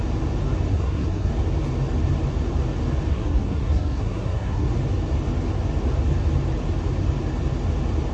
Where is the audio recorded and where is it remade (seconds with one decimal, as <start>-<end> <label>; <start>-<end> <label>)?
0.0-0.7 recorded; 0.7-1.3 remade; 1.3-3.1 recorded; 3.1-4.7 remade; 4.7-8.1 recorded